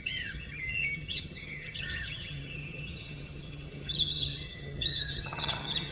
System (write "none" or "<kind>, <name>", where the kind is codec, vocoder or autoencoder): vocoder, HiFi-GAN